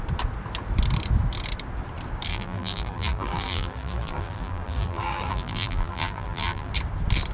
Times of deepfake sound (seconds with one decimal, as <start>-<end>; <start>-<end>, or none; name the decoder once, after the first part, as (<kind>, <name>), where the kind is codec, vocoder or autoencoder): 2.3-6.7 (vocoder, BigVGAN v2)